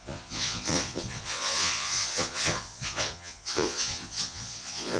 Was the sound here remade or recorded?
remade